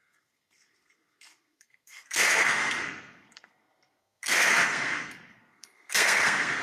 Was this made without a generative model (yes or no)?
no